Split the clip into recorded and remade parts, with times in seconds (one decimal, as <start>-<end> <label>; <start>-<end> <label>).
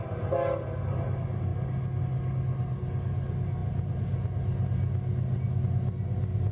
0.0-6.5 recorded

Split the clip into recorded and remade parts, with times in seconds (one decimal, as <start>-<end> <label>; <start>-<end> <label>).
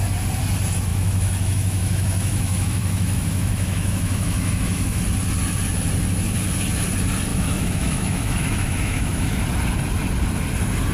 0.0-0.9 recorded; 0.9-5.0 remade; 5.0-7.3 recorded; 7.3-9.4 remade; 9.4-10.9 recorded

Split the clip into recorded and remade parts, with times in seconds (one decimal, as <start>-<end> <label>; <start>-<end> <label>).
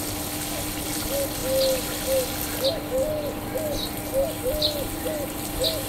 0.0-5.9 recorded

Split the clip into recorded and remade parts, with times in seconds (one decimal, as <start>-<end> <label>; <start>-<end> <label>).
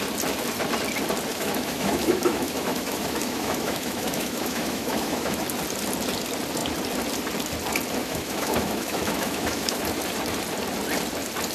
0.0-1.3 recorded; 1.3-5.4 remade; 5.4-8.0 recorded; 8.0-9.8 remade; 9.8-11.5 recorded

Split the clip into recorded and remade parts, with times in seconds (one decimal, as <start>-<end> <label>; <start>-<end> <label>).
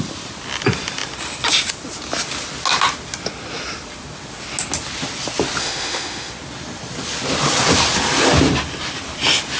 0.0-5.6 recorded; 5.6-6.3 remade; 6.3-9.6 recorded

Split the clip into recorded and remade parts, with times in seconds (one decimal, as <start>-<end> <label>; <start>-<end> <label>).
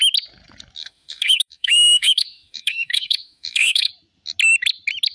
0.0-0.8 recorded; 0.8-3.9 remade; 3.9-5.1 recorded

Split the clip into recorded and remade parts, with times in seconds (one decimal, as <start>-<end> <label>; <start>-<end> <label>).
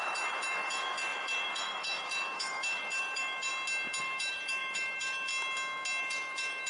0.0-3.5 remade; 3.5-4.0 recorded; 4.0-5.3 remade; 5.3-6.0 recorded; 6.0-6.7 remade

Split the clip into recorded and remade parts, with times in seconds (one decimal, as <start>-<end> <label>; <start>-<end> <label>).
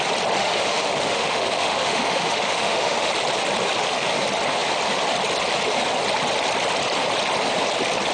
0.0-0.4 recorded; 0.4-3.1 remade; 3.1-8.1 recorded